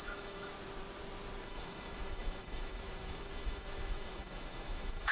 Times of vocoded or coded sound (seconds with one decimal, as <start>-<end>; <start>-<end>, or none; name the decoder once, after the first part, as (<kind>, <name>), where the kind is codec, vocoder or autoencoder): 0.0-0.5 (autoencoder, DAC-VAE); 1.4-5.1